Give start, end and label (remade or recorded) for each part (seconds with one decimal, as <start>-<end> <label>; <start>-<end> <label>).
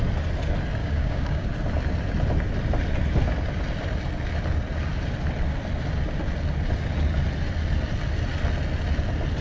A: 0.0-0.8 recorded; 0.8-1.5 remade; 1.5-9.4 recorded